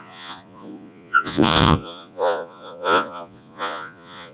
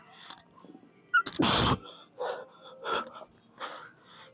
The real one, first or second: second